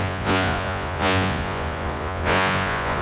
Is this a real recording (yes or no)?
no